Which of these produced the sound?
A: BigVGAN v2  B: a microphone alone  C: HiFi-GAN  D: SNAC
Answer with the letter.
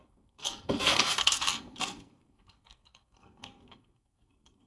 D